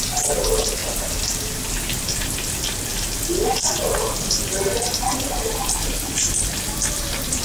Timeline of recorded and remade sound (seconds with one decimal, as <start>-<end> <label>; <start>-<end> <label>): 0.0-7.4 recorded